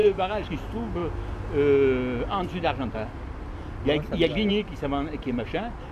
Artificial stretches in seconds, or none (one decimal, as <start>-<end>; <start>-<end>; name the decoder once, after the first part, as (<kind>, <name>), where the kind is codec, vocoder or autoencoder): 0.0-0.5 (codec, DAC)